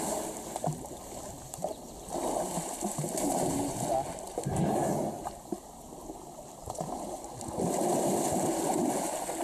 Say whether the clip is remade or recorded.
recorded